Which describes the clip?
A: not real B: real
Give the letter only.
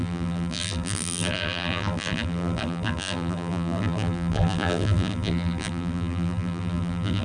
A